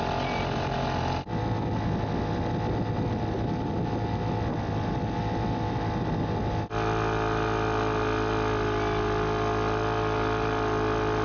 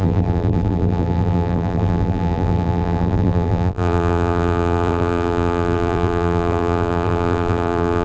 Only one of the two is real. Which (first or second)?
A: first